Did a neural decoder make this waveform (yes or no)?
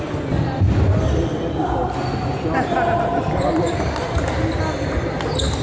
no